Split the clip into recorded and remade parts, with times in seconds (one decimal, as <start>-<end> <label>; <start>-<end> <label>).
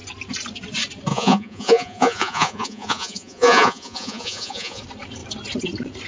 0.0-1.1 recorded; 1.1-4.8 remade; 4.8-6.1 recorded